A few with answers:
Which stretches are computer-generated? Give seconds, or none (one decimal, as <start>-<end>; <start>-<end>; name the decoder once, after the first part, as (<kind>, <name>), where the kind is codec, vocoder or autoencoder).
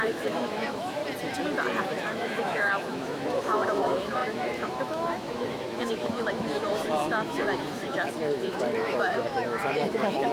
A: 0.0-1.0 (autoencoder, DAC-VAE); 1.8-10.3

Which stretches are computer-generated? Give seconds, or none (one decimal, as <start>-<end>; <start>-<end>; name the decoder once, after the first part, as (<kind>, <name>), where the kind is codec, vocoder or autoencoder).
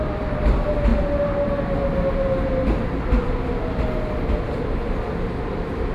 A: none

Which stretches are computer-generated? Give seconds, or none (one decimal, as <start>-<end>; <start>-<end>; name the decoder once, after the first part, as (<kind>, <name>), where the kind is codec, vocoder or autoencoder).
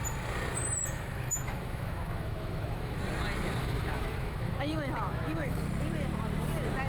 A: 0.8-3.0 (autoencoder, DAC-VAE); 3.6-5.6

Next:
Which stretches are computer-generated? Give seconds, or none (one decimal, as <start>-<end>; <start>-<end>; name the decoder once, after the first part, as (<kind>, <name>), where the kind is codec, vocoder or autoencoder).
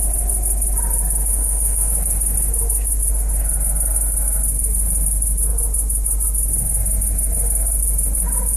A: 1.3-1.9 (autoencoder, DAC-VAE)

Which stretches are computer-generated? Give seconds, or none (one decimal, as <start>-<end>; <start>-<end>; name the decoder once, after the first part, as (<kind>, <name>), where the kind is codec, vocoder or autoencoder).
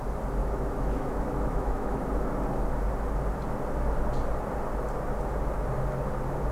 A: 0.4-2.0 (autoencoder, DAC-VAE)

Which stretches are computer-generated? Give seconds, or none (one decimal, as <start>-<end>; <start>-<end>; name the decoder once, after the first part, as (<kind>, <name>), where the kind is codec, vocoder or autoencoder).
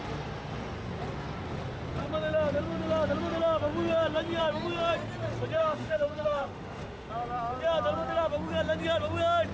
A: 5.6-7.1 (autoencoder, DAC-VAE)